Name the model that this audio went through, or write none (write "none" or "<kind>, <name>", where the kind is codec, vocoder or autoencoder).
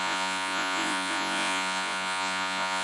vocoder, Vocos